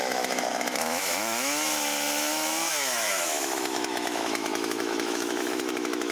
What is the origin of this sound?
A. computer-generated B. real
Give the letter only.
A